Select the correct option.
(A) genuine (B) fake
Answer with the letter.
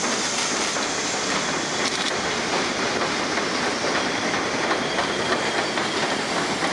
A